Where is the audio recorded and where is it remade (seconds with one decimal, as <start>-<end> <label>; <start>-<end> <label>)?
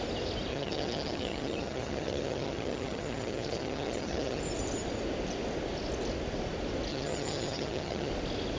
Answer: 0.0-0.5 recorded; 0.5-4.4 remade; 4.4-6.9 recorded; 6.9-8.1 remade; 8.1-8.6 recorded